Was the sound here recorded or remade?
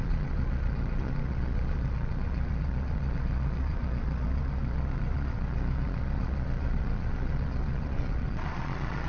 remade